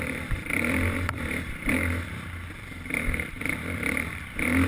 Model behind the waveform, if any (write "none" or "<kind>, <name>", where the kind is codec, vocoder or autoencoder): vocoder, BigVGAN v2